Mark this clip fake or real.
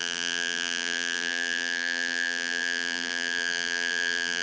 fake